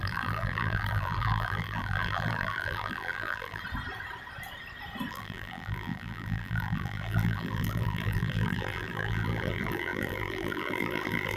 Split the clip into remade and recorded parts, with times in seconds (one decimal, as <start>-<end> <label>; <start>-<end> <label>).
0.0-3.6 remade; 3.6-5.1 recorded; 5.1-11.4 remade